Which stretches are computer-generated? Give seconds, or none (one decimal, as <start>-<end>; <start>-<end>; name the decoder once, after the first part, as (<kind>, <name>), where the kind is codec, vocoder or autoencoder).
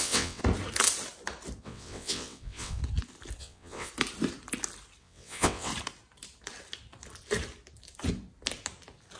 0.0-0.4 (vocoder, WaveNeXt); 1.6-2.8; 3.4-3.9; 5.0-5.7